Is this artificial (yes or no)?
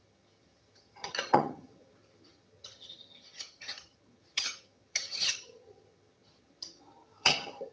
yes